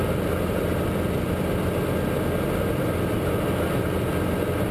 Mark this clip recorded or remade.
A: recorded